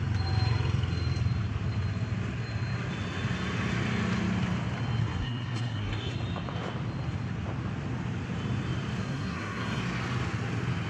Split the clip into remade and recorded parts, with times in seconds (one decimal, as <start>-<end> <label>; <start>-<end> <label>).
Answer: 0.0-5.0 recorded; 5.0-6.1 remade; 6.1-9.0 recorded; 9.0-9.8 remade; 9.8-10.9 recorded